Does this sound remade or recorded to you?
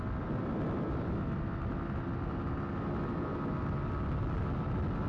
recorded